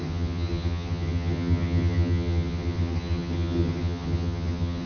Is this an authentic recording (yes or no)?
no